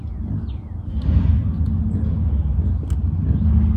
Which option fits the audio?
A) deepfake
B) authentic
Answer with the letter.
B